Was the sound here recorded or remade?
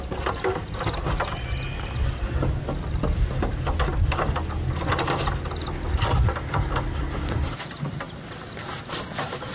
recorded